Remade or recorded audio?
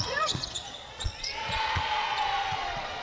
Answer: remade